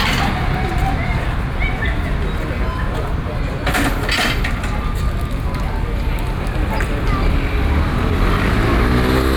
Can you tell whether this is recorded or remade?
recorded